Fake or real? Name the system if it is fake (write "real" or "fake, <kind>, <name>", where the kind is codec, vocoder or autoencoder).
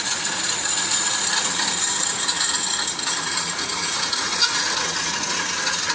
fake, vocoder, Vocos